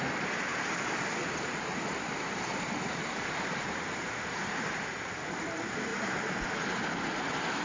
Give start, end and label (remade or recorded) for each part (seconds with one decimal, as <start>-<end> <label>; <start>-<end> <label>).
0.0-0.5 recorded; 0.5-5.1 remade; 5.1-5.9 recorded; 5.9-6.4 remade; 6.4-7.6 recorded